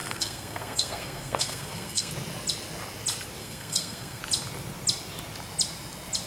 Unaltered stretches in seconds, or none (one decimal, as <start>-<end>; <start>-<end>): 2.1-3.4; 4.2-6.3